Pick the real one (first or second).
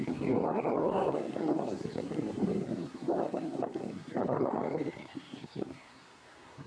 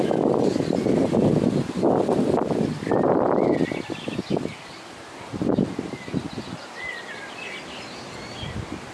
second